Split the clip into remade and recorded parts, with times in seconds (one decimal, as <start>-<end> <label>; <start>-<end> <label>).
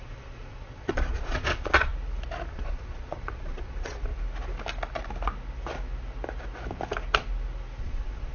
0.0-1.9 remade; 1.9-2.5 recorded; 2.5-4.1 remade; 4.1-7.8 recorded; 7.8-8.3 remade